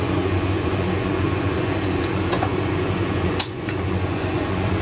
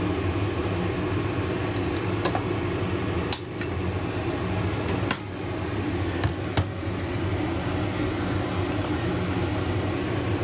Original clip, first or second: second